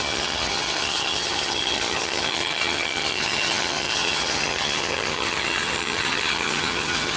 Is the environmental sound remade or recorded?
remade